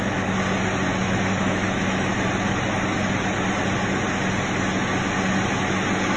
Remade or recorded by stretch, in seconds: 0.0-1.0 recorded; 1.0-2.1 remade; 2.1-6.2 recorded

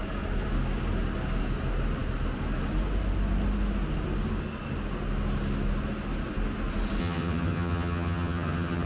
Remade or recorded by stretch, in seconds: 0.0-7.0 recorded; 7.0-8.9 remade

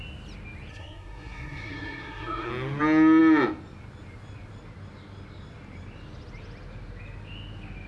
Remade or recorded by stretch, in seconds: 0.0-0.7 recorded; 0.7-2.5 remade; 2.5-7.9 recorded

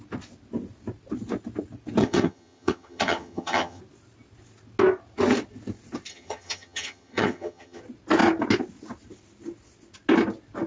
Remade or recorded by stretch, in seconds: 0.0-2.0 recorded; 2.0-3.8 remade; 3.8-6.1 recorded; 6.1-7.8 remade; 7.8-10.7 recorded

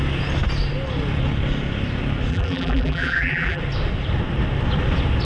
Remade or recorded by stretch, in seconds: 0.0-2.3 recorded; 2.3-3.6 remade; 3.6-5.2 recorded

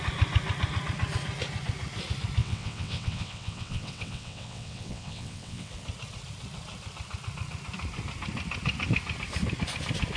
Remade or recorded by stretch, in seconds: 0.0-2.4 recorded; 2.4-5.7 remade; 5.7-10.2 recorded